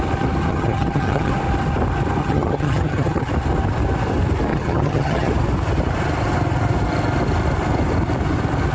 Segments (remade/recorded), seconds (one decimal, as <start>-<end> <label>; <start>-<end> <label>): 0.0-0.5 recorded; 0.5-1.3 remade; 1.3-2.2 recorded; 2.2-3.3 remade; 3.3-4.5 recorded; 4.5-5.3 remade; 5.3-8.7 recorded